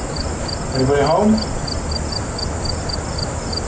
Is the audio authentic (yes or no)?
yes